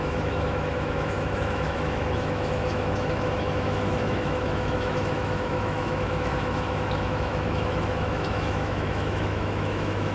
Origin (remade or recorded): remade